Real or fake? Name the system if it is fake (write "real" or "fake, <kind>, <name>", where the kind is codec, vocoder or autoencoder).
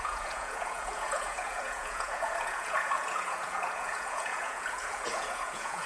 fake, vocoder, Vocos